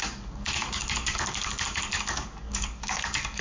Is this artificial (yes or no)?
yes